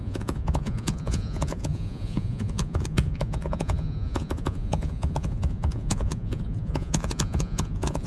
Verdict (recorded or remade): remade